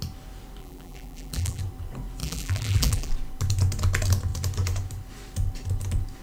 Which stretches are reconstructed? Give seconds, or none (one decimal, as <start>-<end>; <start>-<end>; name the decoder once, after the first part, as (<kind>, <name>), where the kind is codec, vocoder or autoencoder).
0.6-1.6 (vocoder, BigVGAN v2); 2.2-3.1